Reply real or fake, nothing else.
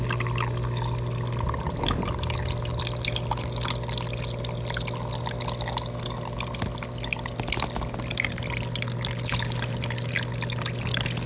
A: real